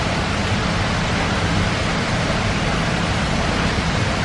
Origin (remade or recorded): recorded